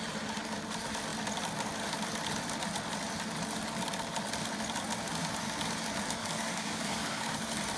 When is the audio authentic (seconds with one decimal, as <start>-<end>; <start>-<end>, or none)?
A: 0.0-6.2; 7.3-7.8